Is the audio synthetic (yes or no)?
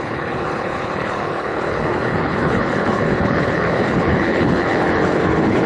yes